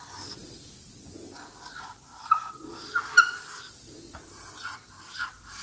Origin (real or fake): real